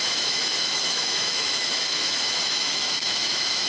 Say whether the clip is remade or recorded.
remade